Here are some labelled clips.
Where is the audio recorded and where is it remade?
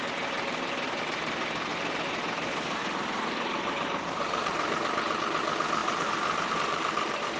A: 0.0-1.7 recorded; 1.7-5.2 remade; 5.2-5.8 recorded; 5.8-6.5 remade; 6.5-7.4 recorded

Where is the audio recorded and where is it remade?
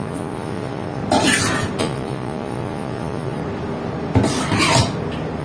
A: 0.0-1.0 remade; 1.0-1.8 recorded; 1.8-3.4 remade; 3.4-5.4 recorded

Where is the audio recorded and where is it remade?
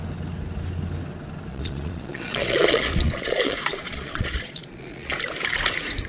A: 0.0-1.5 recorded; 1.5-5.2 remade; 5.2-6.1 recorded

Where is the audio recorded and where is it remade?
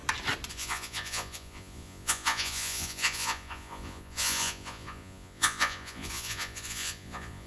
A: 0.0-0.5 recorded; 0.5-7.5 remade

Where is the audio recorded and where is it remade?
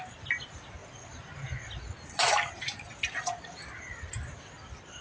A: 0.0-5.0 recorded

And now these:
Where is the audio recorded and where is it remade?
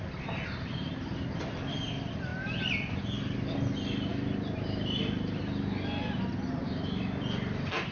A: 0.0-7.9 recorded